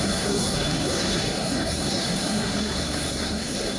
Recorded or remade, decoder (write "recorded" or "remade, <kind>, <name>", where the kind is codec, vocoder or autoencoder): remade, codec, SNAC